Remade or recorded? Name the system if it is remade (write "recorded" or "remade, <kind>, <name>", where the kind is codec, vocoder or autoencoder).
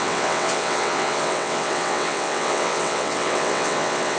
remade, vocoder, WaveNeXt